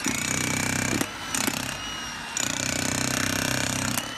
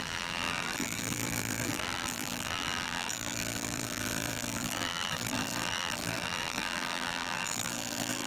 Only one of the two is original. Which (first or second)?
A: first